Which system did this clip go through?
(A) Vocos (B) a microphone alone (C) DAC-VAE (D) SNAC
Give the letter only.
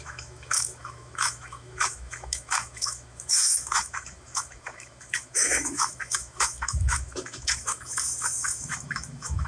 C